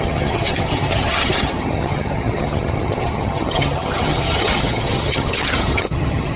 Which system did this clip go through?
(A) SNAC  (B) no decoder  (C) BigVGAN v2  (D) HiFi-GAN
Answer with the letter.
D